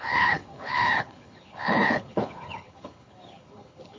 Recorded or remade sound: remade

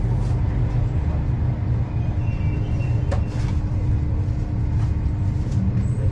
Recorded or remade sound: recorded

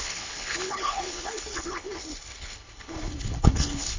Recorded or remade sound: remade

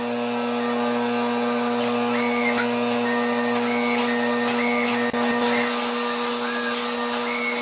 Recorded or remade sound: recorded